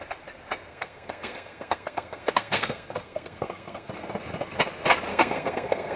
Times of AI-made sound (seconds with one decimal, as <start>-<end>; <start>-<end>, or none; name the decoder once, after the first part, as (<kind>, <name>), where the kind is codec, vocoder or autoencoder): 0.7-3.9 (codec, SNAC); 5.1-6.0

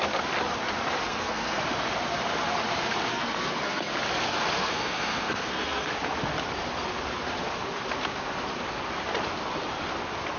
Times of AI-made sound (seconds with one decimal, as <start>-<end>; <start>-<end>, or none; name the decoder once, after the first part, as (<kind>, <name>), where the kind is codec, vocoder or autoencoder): 1.1-1.6 (codec, SNAC); 3.1-3.9; 4.6-5.9

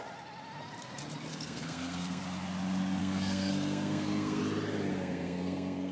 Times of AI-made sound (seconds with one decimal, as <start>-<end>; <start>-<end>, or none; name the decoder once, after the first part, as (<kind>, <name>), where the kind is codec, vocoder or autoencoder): 1.3-2.2 (codec, SNAC); 3.0-4.4; 4.9-5.9

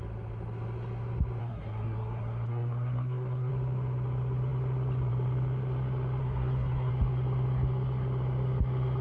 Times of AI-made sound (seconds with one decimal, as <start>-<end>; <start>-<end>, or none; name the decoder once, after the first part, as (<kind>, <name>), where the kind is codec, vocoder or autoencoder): 1.4-3.5 (codec, SNAC); 6.2-6.9

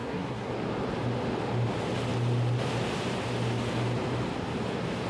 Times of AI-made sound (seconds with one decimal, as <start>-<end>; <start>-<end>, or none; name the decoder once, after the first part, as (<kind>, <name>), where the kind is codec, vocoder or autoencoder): 0.0-0.5 (codec, SNAC)

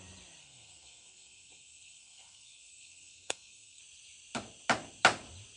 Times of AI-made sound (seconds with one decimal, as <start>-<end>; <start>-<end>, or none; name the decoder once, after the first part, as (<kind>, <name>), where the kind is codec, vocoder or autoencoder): 0.4-3.8 (codec, SNAC)

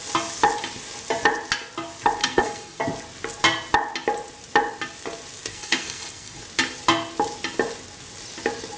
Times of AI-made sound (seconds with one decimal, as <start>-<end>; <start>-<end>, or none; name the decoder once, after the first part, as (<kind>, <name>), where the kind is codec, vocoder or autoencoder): 2.2-2.8 (codec, SNAC); 5.5-6.4

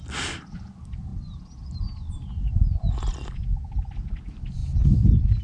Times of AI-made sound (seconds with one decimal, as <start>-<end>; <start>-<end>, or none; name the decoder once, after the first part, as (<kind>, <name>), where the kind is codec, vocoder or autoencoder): none